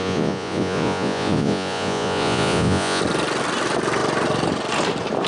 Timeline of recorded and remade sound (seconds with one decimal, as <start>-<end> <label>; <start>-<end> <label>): 0.0-3.0 remade; 3.0-5.3 recorded